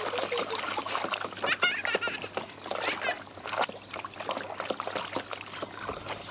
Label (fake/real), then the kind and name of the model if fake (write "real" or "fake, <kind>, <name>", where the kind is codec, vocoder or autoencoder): real